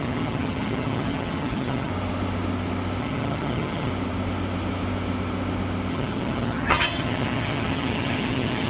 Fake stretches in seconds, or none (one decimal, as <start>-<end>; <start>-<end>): 0.0-1.9; 3.0-3.9; 5.9-8.7